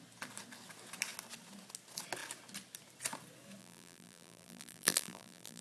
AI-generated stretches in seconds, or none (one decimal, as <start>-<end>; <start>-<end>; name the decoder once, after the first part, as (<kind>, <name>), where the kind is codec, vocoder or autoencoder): 3.6-5.6 (vocoder, BigVGAN v2)